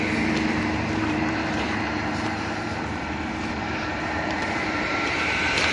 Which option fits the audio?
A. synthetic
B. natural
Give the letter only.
A